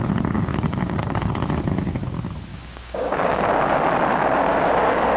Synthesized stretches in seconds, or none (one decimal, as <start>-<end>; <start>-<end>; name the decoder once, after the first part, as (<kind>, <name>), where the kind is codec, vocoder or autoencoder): 0.5-1.3 (codec, DAC); 2.5-3.4; 4.5-5.2